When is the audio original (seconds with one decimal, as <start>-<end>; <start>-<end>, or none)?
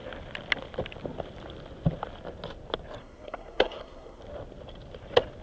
0.0-3.0; 4.2-5.4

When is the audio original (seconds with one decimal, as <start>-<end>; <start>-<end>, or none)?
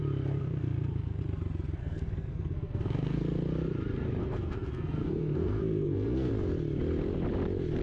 0.0-0.4; 1.2-1.8; 3.2-4.2; 6.3-7.8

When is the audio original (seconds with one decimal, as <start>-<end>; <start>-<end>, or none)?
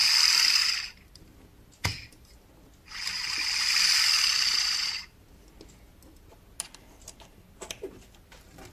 0.0-8.7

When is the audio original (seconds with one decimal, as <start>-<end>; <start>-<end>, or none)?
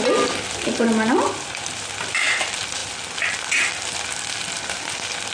0.0-5.3